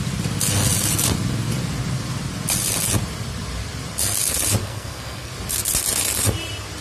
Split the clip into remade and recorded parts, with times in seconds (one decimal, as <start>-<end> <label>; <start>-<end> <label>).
0.0-4.6 recorded; 4.6-5.3 remade; 5.3-6.8 recorded